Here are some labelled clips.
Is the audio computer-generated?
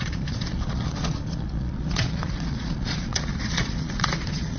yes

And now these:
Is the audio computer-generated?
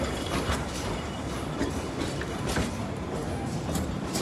yes